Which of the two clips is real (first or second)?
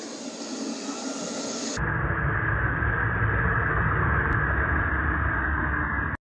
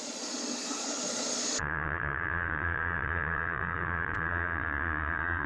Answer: first